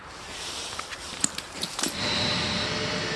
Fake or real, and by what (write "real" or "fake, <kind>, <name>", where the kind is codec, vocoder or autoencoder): real